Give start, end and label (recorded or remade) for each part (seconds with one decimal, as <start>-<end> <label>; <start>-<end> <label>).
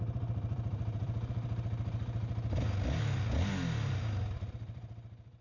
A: 0.0-2.2 remade; 2.2-4.5 recorded; 4.5-5.4 remade